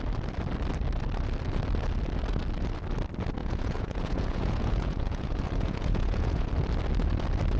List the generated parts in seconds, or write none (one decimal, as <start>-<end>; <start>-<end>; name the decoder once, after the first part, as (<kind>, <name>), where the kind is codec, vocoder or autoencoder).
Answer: 3.4-6.5 (vocoder, Vocos)